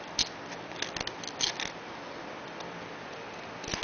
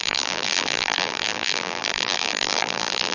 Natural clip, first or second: first